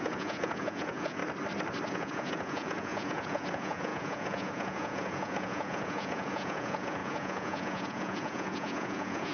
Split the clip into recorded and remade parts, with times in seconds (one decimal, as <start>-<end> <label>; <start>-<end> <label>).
0.0-1.2 remade; 1.2-1.9 recorded; 1.9-9.3 remade